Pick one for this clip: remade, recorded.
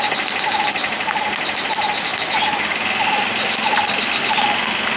recorded